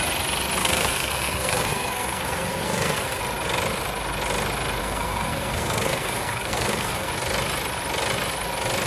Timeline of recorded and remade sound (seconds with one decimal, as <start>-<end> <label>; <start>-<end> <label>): 0.0-0.6 recorded; 0.6-3.2 remade; 3.2-4.8 recorded; 4.8-7.1 remade; 7.1-8.9 recorded